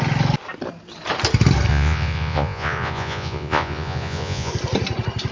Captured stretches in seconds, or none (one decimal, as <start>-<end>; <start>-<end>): 0.0-1.7; 4.5-5.3